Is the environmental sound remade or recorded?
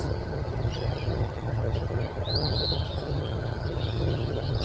remade